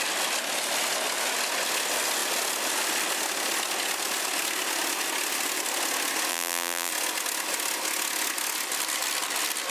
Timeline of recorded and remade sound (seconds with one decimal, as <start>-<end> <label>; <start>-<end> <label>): 0.0-6.3 recorded; 6.3-6.9 remade; 6.9-9.7 recorded